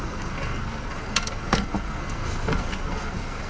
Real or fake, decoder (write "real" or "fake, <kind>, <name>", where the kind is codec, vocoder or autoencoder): fake, codec, SNAC